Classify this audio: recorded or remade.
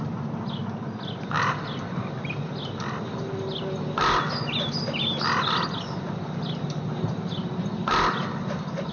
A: recorded